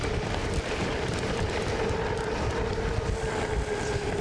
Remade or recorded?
remade